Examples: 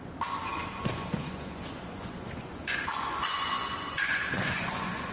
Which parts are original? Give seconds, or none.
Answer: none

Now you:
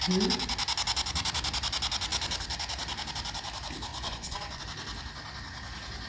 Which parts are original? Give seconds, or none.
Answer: 0.0-3.9; 4.6-6.1

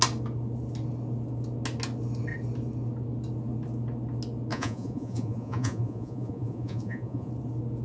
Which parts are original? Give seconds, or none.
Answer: 0.0-4.5; 7.3-7.8

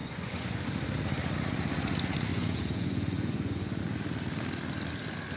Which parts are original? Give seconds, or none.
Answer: 0.6-2.3; 3.8-5.4

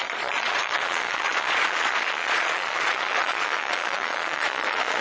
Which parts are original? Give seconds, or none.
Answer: none

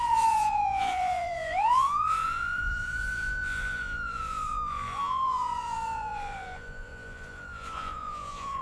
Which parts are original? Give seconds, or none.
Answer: none

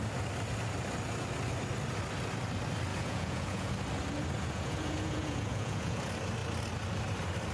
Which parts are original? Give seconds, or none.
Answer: 0.0-2.9; 3.7-4.4; 6.0-7.5